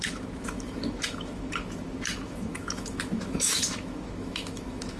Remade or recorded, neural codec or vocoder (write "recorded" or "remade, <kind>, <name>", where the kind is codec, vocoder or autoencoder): remade, autoencoder, DAC-VAE